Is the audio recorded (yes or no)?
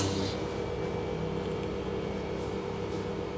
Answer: yes